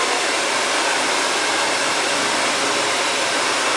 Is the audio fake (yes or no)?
no